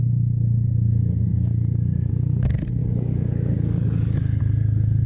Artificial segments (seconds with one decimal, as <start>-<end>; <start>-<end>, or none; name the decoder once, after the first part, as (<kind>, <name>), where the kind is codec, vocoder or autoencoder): 1.3-2.1 (codec, DAC); 2.8-4.4